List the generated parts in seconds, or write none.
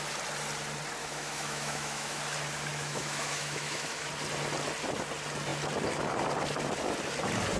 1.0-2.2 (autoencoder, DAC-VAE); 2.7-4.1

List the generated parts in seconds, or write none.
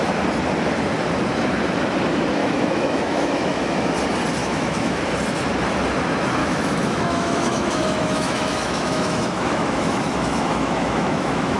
2.4-3.9 (autoencoder, DAC-VAE); 4.4-5.0; 6.4-11.6